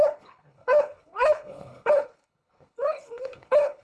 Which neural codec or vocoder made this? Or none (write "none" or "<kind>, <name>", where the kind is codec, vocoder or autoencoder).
codec, HILCodec